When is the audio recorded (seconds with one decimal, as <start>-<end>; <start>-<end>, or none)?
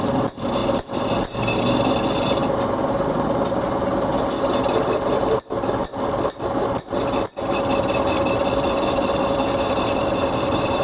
0.6-1.1; 2.4-5.9